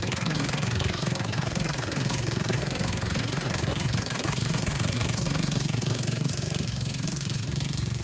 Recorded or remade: remade